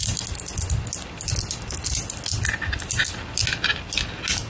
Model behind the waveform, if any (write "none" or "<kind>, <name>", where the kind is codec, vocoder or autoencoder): none